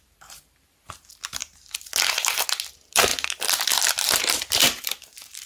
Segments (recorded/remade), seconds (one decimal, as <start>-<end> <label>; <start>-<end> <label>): 0.0-1.4 remade; 1.4-2.7 recorded; 2.7-3.1 remade; 3.1-3.9 recorded; 3.9-5.5 remade

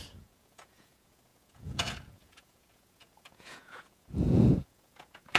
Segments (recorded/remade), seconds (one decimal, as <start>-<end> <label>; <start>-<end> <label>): 0.0-5.4 remade